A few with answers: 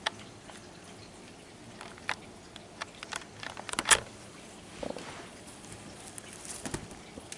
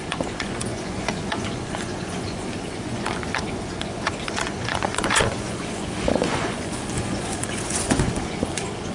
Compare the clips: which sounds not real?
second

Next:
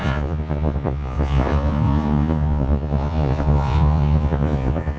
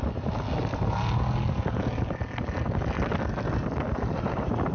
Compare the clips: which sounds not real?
first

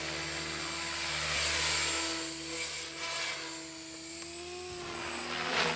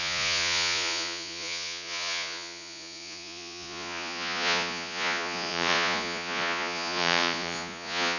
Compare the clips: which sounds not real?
second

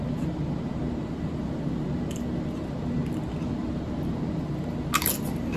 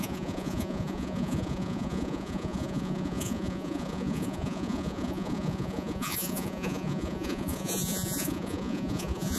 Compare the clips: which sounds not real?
second